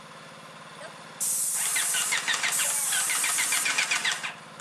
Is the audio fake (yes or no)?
no